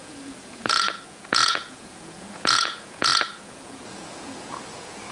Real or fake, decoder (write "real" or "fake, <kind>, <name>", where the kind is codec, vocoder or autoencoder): fake, vocoder, Vocos